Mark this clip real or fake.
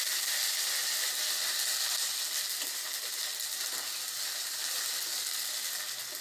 real